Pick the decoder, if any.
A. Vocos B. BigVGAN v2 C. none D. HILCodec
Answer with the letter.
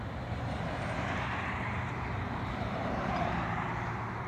B